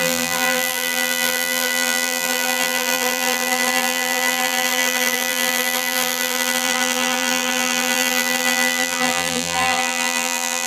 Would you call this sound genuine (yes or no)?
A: no